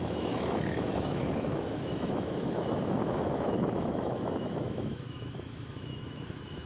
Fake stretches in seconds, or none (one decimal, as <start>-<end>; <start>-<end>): 0.0-6.7